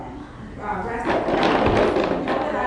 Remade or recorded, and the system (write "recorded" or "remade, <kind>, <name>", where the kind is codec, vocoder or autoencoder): recorded